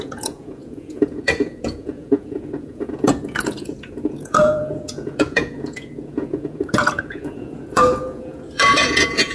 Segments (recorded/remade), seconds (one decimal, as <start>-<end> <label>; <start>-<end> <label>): 0.0-9.3 remade